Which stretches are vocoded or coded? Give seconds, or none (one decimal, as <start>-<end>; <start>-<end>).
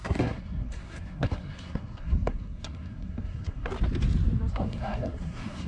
0.0-3.7; 4.5-5.7